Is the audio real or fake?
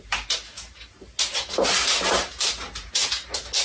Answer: real